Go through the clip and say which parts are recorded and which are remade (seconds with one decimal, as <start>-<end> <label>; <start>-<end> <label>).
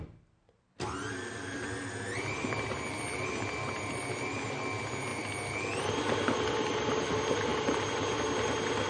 0.0-8.9 recorded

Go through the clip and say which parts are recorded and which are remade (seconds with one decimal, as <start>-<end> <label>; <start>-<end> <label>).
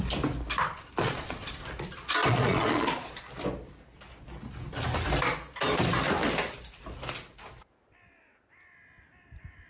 0.0-1.0 recorded; 1.0-1.5 remade; 1.5-2.3 recorded; 2.3-3.1 remade; 3.1-9.7 recorded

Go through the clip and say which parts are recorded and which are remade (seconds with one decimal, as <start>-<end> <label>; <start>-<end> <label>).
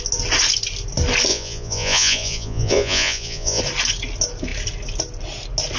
0.0-1.3 recorded; 1.3-3.6 remade; 3.6-5.8 recorded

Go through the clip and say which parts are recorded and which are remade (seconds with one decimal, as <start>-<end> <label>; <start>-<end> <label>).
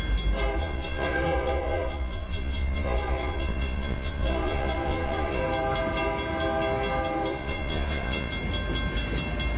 0.0-0.6 recorded; 0.6-5.4 remade; 5.4-7.3 recorded; 7.3-8.3 remade; 8.3-9.6 recorded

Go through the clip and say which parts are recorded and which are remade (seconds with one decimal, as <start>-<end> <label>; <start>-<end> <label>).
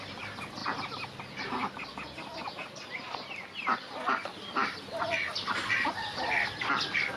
0.0-7.2 recorded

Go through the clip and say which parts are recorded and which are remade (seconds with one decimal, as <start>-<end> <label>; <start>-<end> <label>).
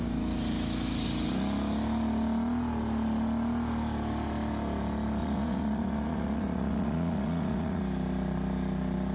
0.0-5.2 recorded; 5.2-7.8 remade; 7.8-9.1 recorded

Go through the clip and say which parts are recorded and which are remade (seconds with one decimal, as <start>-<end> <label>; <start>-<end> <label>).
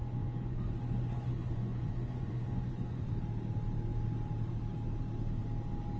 0.0-3.1 remade; 3.1-6.0 recorded